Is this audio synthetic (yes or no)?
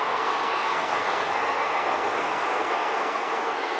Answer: yes